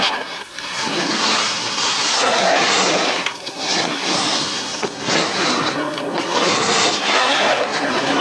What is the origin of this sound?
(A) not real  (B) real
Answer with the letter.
A